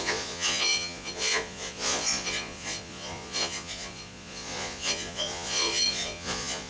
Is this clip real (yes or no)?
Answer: no